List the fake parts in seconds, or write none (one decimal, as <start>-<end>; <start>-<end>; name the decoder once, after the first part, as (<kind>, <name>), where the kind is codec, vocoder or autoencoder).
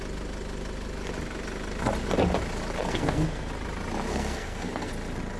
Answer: 2.8-3.5 (codec, SNAC); 4.1-4.9